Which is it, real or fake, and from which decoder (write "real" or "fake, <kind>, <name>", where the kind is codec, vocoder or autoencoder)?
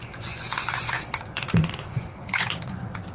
fake, vocoder, Vocos